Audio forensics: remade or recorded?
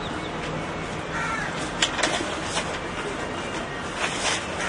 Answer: recorded